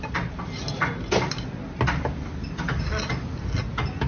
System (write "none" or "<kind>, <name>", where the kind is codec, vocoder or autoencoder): none